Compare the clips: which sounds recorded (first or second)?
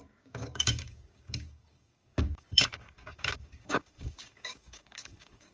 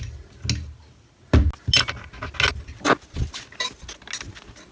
second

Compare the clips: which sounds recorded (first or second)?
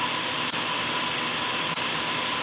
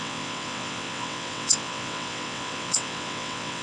first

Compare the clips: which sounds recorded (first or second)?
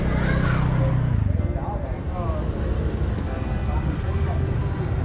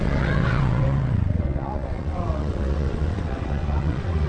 first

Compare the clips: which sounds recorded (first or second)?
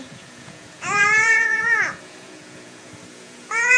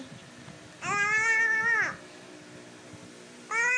second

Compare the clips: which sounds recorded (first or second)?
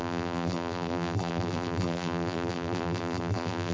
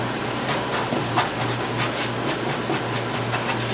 second